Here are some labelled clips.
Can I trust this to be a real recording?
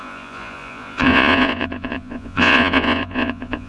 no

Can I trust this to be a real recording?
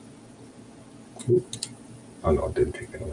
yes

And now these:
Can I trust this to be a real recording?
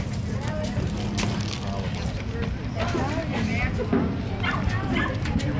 yes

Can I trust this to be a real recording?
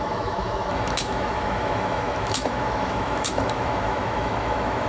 no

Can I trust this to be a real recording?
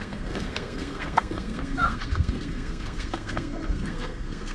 no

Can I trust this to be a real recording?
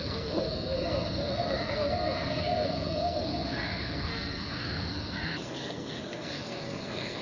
no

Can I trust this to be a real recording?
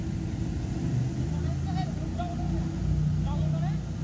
yes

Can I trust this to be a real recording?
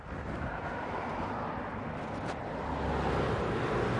yes